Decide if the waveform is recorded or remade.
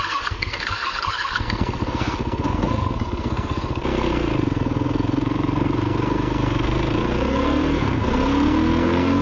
remade